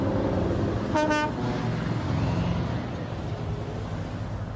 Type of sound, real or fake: real